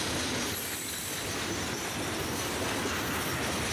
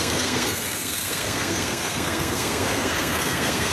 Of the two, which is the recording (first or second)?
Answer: first